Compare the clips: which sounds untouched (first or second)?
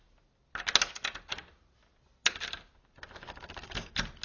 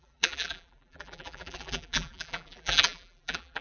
first